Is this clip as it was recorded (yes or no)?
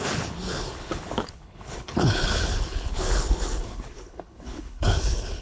no